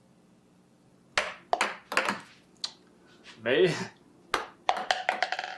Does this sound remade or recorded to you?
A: recorded